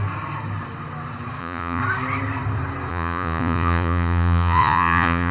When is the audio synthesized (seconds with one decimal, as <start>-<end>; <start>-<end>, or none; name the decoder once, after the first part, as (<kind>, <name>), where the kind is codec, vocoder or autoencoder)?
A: 1.4-1.8 (vocoder, Vocos); 2.9-5.3